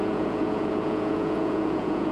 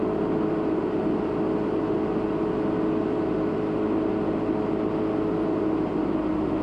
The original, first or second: second